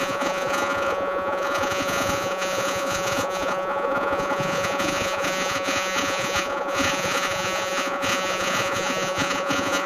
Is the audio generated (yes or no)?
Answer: yes